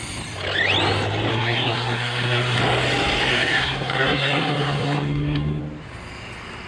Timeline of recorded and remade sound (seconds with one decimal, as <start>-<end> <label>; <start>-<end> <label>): 0.0-1.3 recorded; 1.3-2.6 remade; 2.6-3.3 recorded; 3.3-5.6 remade; 5.6-6.7 recorded